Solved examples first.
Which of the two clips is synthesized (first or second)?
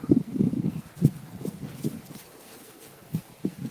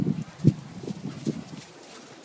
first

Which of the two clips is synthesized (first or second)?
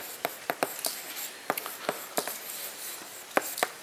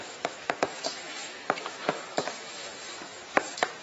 second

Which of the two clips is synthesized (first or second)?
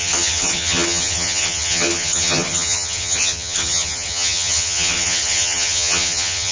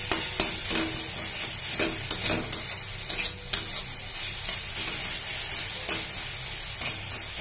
first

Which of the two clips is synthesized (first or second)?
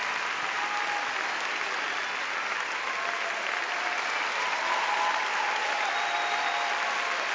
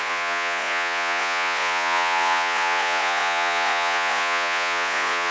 second